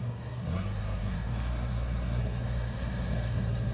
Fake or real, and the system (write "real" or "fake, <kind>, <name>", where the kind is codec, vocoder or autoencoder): fake, codec, SNAC